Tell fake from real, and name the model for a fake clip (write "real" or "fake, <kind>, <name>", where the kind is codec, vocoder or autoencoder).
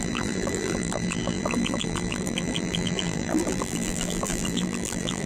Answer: fake, vocoder, BigVGAN v2